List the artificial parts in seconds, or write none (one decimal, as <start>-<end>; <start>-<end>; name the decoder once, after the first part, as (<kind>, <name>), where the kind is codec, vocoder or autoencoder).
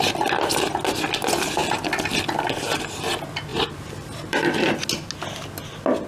3.5-4.9 (vocoder, BigVGAN v2)